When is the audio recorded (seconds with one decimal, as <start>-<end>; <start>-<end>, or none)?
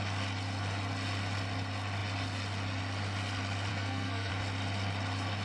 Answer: 0.0-3.7; 4.3-5.4